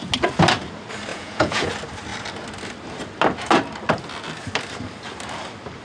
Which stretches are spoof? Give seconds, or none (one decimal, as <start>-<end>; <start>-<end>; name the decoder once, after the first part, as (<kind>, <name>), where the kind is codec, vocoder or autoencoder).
1.1-1.7 (vocoder, Vocos)